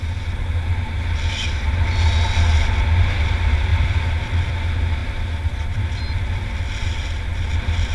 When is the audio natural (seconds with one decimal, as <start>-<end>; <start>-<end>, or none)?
0.0-3.7; 4.5-5.0; 6.0-6.8; 7.4-7.9